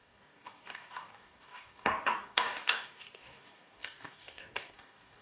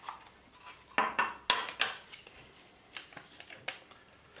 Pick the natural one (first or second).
second